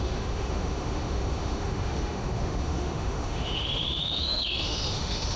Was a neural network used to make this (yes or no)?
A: yes